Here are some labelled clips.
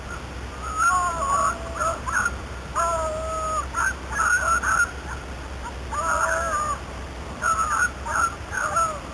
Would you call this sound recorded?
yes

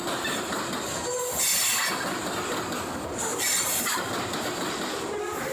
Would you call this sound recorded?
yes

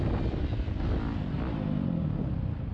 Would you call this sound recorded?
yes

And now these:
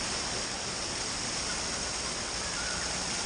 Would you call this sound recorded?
no